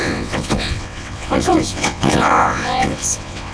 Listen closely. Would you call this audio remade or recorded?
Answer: remade